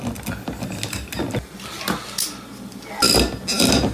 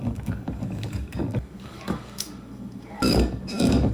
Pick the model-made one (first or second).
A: second